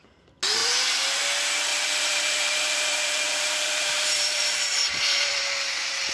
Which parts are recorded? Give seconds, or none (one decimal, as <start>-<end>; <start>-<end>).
0.0-0.6; 1.2-1.7; 5.4-6.1